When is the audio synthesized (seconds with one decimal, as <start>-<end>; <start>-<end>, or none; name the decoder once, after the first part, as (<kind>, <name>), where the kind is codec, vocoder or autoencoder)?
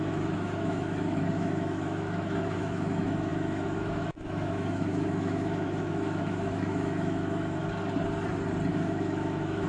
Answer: 0.0-7.6 (autoencoder, DAC-VAE); 8.7-9.7